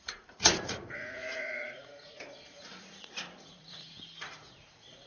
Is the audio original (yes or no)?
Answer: no